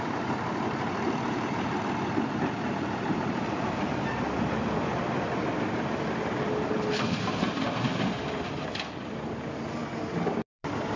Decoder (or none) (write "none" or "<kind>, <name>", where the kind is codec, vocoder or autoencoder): vocoder, BigVGAN v2